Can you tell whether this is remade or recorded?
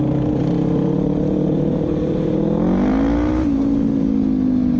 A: recorded